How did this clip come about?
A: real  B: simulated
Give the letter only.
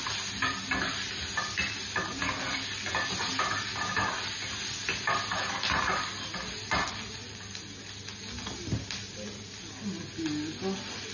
A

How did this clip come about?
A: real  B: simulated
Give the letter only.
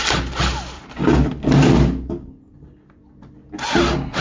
A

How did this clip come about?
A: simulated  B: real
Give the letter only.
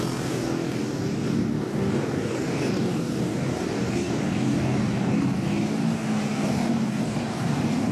A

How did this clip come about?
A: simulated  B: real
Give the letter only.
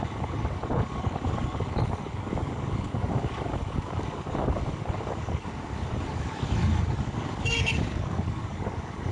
A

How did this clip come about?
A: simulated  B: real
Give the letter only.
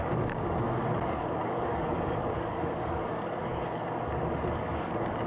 A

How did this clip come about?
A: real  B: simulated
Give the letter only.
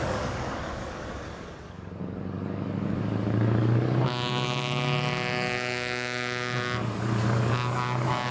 B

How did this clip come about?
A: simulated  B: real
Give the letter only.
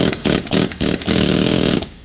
A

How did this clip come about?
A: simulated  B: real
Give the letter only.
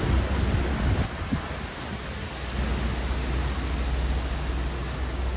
B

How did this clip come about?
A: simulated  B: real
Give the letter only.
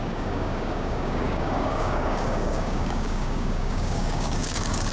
A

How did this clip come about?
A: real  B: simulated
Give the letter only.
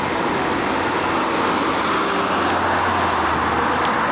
A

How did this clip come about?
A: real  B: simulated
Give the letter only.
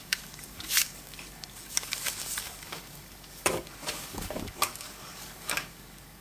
B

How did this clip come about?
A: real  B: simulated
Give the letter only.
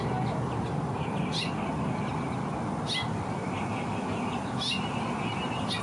A